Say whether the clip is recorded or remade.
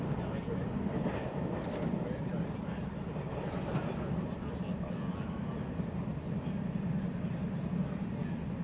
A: recorded